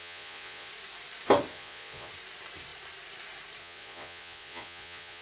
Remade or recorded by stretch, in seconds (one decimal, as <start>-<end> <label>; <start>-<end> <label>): 0.0-0.7 remade; 0.7-1.5 recorded; 1.5-2.1 remade; 2.1-3.6 recorded; 3.6-5.2 remade